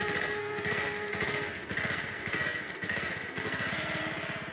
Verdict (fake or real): fake